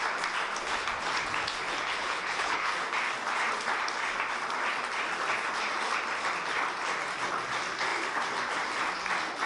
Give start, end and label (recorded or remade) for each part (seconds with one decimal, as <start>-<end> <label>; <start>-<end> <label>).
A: 0.0-2.0 recorded; 2.0-2.7 remade; 2.7-9.5 recorded